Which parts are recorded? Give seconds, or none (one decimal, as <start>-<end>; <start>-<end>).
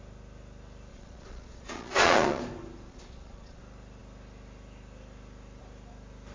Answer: 0.0-0.9; 2.4-2.9; 3.6-6.3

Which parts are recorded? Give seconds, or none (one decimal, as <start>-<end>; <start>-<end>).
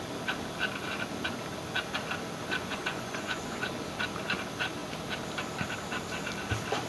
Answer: 0.0-2.6; 3.7-6.9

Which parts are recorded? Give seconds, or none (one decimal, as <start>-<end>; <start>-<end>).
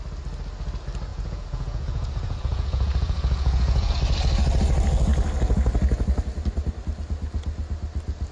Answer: 0.0-1.1; 3.9-8.3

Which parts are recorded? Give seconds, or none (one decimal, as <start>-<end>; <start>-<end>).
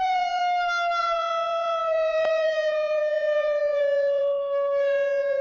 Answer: 0.4-1.0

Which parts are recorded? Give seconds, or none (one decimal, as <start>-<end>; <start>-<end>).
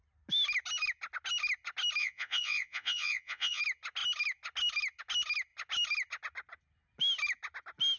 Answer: 0.0-2.0; 3.6-8.0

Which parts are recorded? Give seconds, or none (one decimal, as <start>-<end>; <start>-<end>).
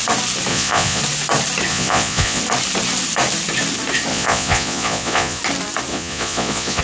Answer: 0.0-0.5; 1.0-1.7; 2.4-4.1; 5.4-5.9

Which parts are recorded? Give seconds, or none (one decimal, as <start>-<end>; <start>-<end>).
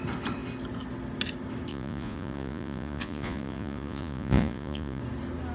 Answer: 0.0-1.7; 5.0-5.5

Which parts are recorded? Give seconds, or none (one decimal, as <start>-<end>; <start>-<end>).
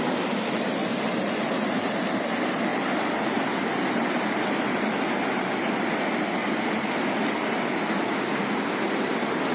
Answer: 0.0-9.5